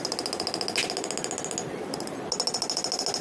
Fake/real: real